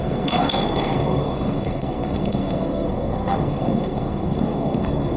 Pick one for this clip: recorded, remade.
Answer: remade